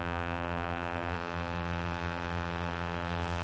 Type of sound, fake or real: fake